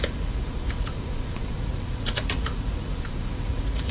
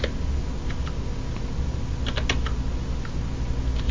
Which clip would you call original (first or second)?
second